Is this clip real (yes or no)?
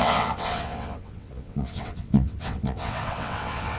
no